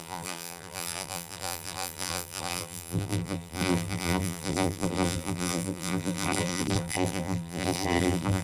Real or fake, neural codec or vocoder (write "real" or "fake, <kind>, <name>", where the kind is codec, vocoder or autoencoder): fake, vocoder, BigVGAN v2